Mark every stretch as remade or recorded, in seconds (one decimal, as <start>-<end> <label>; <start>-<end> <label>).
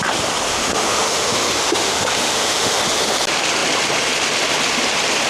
0.0-0.5 recorded; 0.5-2.8 remade; 2.8-5.3 recorded